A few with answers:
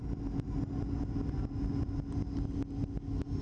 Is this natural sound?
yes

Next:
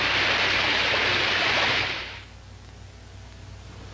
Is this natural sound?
yes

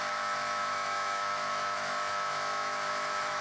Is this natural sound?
no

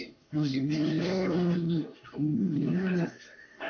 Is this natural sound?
no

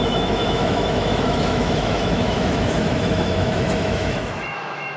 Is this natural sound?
no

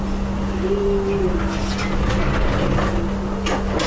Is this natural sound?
yes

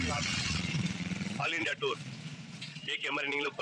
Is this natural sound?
no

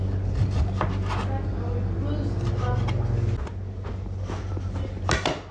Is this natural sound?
yes